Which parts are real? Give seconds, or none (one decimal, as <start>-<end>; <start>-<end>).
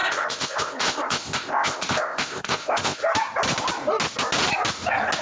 3.0-5.2